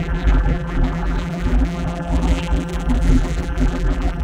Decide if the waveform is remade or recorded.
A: remade